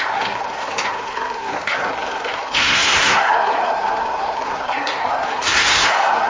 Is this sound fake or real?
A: fake